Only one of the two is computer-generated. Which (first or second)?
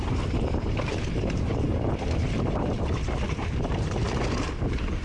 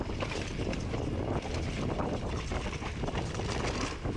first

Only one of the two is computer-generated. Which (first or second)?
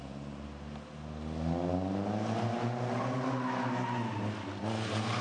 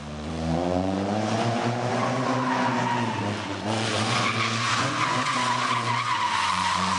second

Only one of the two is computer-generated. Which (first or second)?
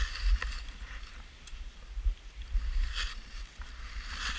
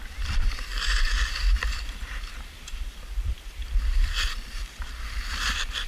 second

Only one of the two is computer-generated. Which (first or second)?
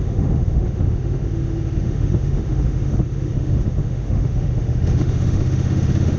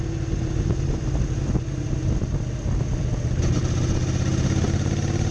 first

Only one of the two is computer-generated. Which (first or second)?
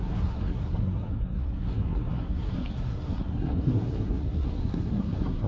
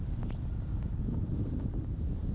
first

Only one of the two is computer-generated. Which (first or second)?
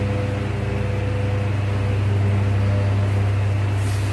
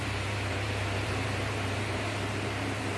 second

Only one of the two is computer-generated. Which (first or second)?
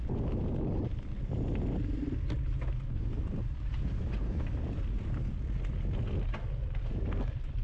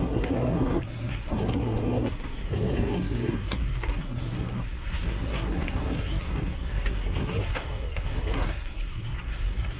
second